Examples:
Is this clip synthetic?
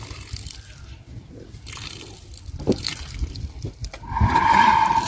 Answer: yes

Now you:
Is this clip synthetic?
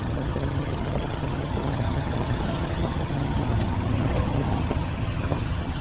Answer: yes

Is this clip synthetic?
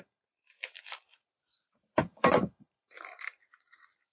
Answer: yes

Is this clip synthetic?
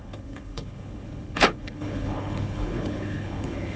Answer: yes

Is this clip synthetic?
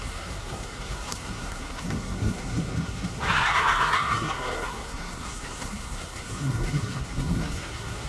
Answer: yes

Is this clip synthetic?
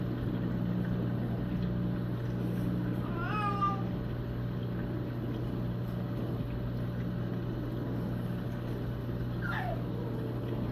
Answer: no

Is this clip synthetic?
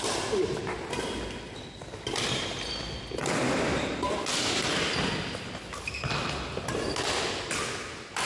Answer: no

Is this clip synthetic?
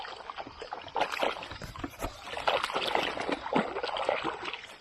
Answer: no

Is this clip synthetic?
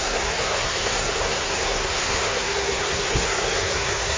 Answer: yes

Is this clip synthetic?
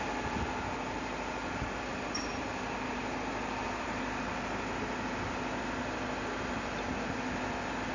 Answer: no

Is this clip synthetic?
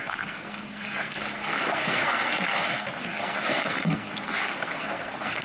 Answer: yes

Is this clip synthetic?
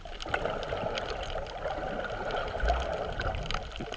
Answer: no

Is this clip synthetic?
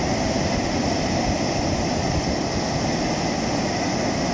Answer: no